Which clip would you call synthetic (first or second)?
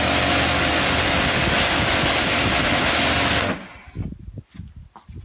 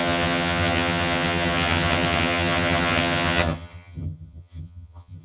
second